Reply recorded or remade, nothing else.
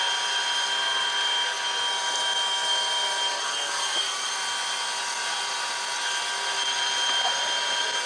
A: recorded